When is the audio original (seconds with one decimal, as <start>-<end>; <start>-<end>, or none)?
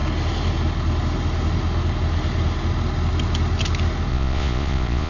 0.0-4.1